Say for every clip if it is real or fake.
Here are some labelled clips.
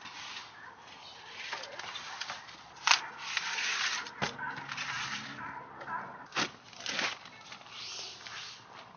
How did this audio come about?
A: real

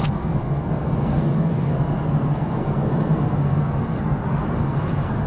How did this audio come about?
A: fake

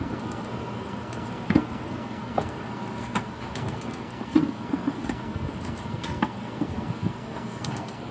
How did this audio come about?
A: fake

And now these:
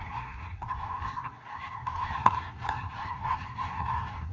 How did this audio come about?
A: fake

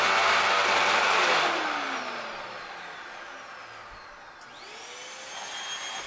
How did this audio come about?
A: real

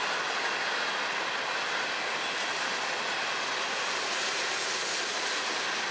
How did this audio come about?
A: real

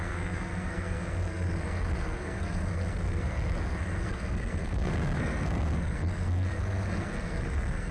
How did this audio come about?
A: fake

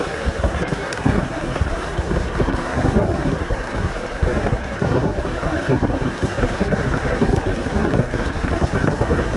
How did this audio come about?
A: fake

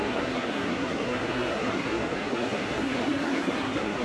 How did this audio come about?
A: fake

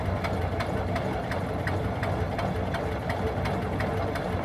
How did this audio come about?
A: real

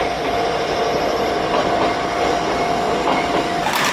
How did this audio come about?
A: real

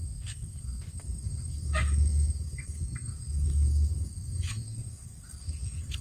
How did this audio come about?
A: fake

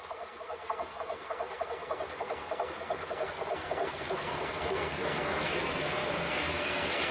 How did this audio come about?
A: fake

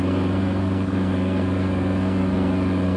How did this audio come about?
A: fake